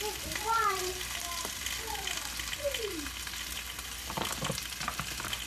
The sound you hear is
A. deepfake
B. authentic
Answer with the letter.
B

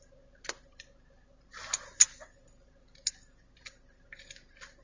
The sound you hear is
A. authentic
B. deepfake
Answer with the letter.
A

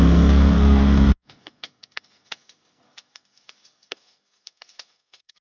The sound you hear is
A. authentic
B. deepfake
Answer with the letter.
B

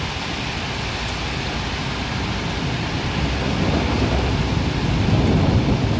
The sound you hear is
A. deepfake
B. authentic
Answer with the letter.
B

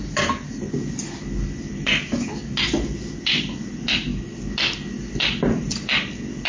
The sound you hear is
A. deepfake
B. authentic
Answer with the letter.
B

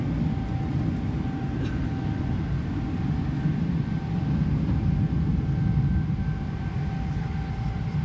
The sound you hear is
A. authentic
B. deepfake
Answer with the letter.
A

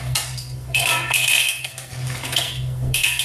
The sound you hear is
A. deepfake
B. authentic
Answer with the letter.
A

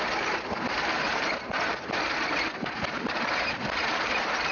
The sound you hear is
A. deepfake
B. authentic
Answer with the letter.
A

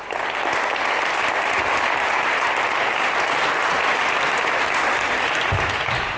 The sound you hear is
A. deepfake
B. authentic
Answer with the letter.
B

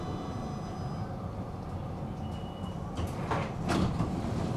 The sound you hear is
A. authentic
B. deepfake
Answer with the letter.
A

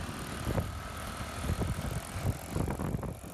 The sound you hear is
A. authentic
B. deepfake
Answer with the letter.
A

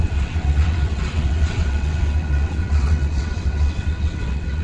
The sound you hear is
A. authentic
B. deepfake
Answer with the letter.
B